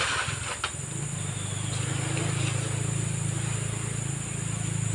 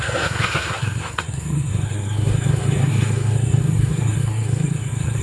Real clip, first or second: first